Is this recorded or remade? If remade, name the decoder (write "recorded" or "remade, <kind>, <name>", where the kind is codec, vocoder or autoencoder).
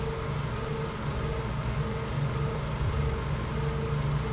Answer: recorded